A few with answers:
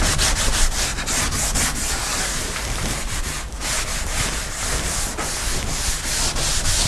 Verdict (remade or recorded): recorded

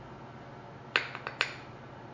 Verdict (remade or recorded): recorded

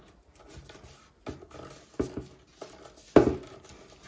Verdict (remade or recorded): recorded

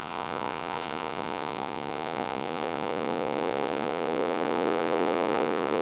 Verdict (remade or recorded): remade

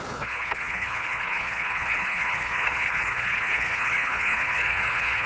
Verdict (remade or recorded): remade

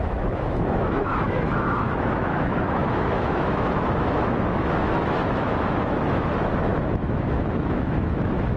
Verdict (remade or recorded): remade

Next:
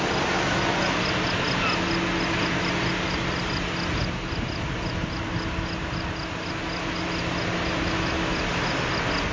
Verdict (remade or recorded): recorded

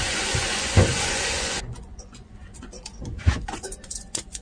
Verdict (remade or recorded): remade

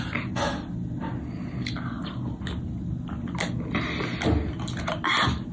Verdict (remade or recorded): recorded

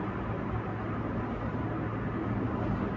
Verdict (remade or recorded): recorded